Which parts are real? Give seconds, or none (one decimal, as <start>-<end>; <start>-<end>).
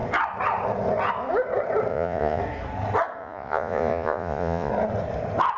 0.0-1.9; 2.4-3.2; 4.7-5.6